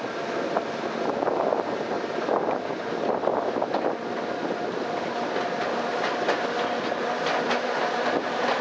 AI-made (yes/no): no